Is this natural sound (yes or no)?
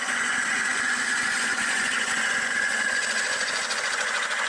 no